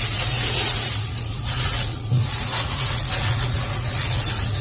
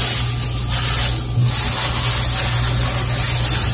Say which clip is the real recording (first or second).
second